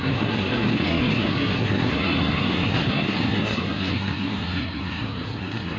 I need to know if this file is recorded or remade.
remade